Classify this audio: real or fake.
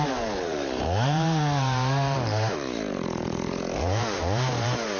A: fake